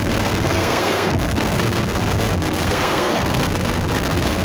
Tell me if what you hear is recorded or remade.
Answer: remade